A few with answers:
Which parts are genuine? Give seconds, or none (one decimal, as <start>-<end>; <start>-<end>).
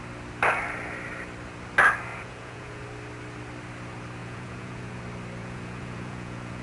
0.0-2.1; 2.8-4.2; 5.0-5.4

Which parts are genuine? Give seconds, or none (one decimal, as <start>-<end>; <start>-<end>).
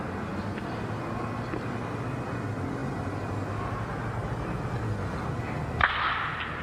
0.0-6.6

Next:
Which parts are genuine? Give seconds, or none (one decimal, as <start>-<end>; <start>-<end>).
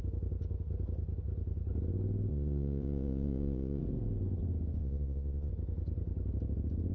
0.0-2.3; 3.8-4.8; 5.5-6.9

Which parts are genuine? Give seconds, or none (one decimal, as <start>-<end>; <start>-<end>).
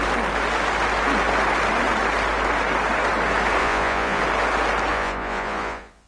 0.0-3.6; 4.2-4.9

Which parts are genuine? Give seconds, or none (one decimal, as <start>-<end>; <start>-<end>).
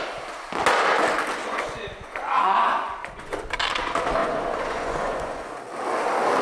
0.0-1.4; 3.5-4.2; 5.5-6.4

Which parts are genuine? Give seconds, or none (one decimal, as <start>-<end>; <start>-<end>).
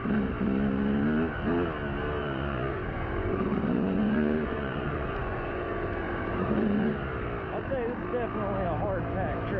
0.0-2.2; 6.9-9.6